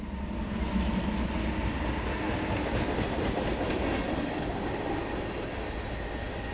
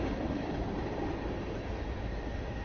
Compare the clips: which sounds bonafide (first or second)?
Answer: first